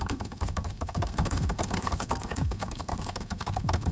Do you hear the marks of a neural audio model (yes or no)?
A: yes